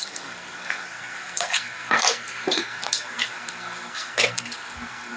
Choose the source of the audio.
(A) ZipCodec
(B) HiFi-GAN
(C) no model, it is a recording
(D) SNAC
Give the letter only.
D